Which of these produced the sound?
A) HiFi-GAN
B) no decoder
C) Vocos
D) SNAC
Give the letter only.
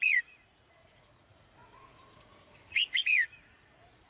C